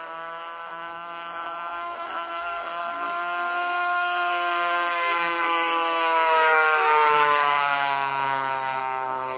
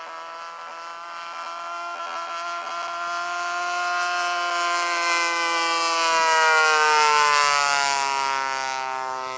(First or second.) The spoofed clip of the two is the first